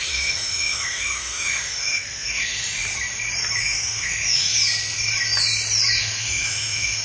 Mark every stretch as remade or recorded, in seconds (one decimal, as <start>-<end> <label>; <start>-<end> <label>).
0.0-2.6 remade; 2.6-3.6 recorded; 3.6-4.5 remade; 4.5-6.0 recorded; 6.0-7.0 remade